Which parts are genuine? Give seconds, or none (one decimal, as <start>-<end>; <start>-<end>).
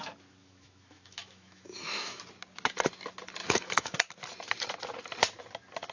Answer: 0.0-0.4; 2.2-3.4; 4.0-5.9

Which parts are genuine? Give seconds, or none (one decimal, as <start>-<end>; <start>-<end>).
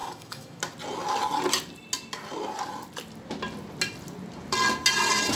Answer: 0.6-5.4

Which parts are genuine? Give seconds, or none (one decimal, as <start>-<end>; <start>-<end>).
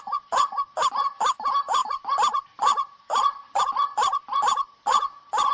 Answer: 0.0-5.5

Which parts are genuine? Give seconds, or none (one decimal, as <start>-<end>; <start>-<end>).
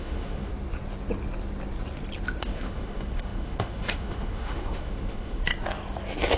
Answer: 0.5-2.4; 5.5-6.4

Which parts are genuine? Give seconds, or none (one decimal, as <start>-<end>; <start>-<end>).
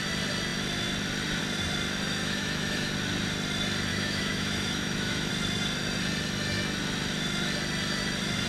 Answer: 0.0-2.2; 2.9-3.9; 5.3-8.5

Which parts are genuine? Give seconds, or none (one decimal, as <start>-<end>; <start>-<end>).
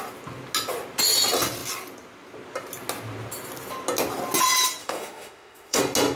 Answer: 0.0-4.8; 5.8-6.2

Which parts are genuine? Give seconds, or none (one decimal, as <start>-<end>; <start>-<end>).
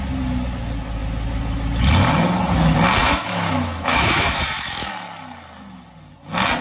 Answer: 0.0-3.0; 4.9-6.6